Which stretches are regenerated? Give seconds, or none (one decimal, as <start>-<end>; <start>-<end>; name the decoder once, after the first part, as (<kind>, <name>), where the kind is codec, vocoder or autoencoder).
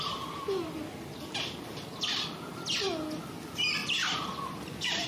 none